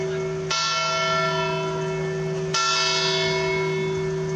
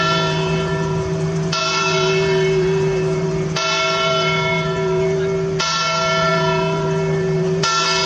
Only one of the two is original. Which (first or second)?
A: first